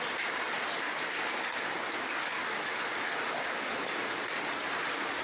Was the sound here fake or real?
real